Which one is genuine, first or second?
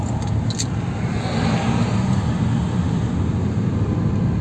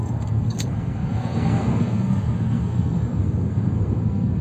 first